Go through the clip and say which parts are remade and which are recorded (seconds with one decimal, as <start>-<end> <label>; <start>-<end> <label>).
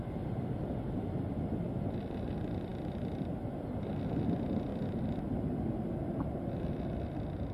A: 0.0-7.5 recorded